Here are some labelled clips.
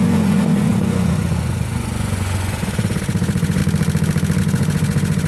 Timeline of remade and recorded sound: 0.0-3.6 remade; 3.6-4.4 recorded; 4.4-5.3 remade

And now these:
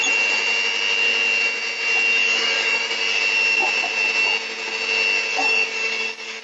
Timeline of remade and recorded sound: 0.0-2.2 recorded; 2.2-3.2 remade; 3.2-5.3 recorded; 5.3-6.4 remade